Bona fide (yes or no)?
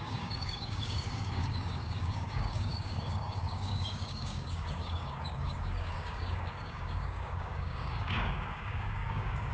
no